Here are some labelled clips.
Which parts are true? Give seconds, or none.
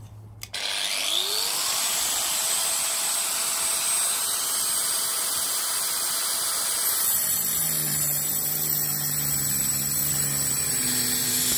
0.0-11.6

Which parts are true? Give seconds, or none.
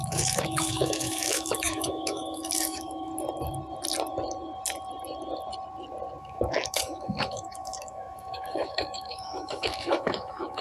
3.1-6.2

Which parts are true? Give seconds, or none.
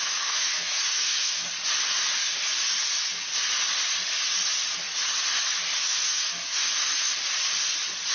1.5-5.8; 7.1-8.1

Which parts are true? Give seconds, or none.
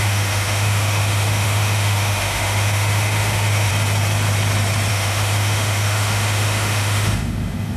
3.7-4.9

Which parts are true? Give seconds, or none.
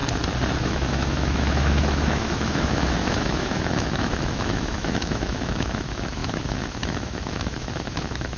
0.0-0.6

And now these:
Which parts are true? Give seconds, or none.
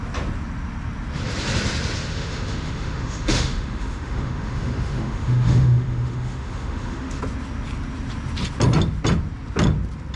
0.0-2.1; 7.2-10.2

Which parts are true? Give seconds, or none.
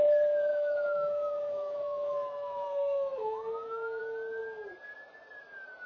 0.0-0.5; 4.0-5.9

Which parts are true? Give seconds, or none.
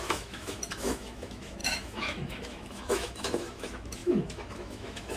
none